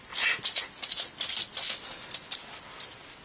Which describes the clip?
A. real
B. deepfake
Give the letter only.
A